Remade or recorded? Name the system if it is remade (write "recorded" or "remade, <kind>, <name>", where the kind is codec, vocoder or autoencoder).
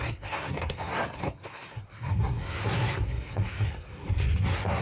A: remade, codec, SNAC